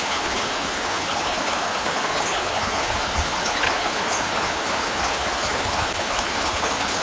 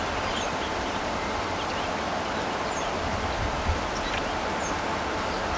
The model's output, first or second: first